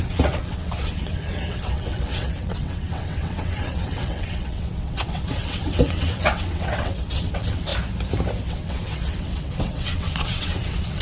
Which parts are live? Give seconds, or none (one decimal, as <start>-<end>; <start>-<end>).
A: 7.7-8.5